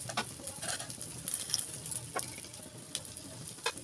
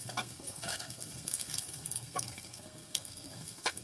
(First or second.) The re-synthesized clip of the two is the second